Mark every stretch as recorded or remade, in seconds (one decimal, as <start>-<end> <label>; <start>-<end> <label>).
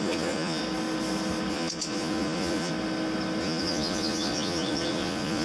0.0-0.6 remade; 0.6-1.5 recorded; 1.5-2.7 remade; 2.7-3.4 recorded; 3.4-5.4 remade